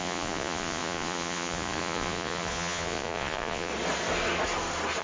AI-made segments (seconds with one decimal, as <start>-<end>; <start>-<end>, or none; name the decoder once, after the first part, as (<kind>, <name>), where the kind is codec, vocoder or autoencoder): 0.0-3.7 (vocoder, Vocos)